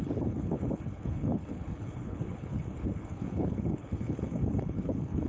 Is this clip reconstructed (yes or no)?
yes